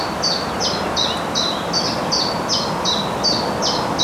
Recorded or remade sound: recorded